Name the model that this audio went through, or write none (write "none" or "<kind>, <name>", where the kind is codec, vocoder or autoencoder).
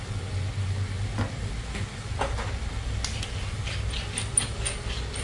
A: none